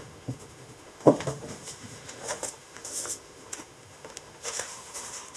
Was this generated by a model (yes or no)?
yes